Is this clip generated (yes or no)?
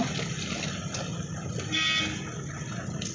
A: no